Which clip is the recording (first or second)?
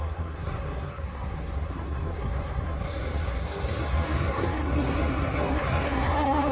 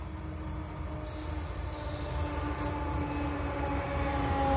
second